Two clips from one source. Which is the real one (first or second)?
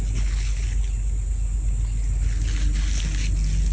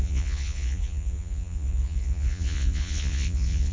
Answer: first